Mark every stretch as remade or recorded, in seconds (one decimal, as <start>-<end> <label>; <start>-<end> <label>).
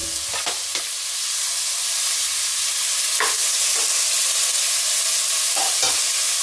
0.0-3.4 recorded; 3.4-4.8 remade; 4.8-6.4 recorded